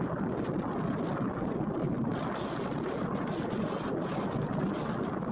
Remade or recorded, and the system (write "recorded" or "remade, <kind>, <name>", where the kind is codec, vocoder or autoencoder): recorded